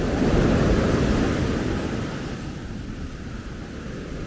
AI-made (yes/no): no